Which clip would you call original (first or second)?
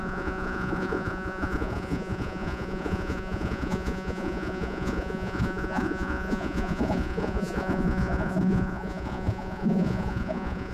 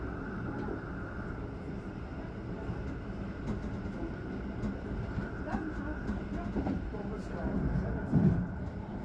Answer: second